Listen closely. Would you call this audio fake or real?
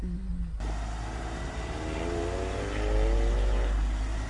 real